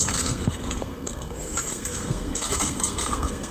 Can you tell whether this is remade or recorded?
remade